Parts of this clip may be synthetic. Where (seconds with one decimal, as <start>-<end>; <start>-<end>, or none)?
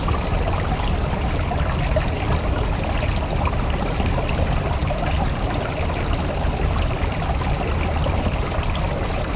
none